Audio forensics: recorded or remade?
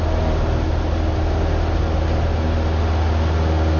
recorded